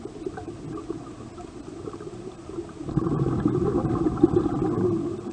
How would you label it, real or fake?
real